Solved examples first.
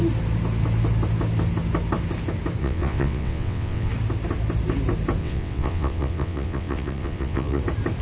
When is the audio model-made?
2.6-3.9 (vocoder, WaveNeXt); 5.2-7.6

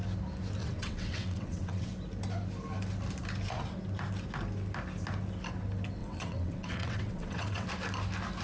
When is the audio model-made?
0.6-1.9 (vocoder, WaveNeXt); 6.0-7.7

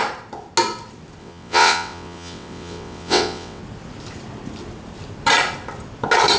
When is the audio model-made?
1.2-3.6 (vocoder, WaveNeXt)

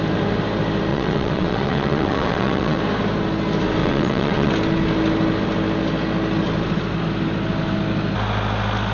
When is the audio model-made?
0.9-2.8 (vocoder, WaveNeXt); 3.8-4.5

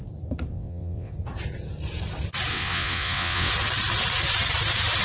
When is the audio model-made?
0.5-1.1 (vocoder, WaveNeXt); 2.5-3.5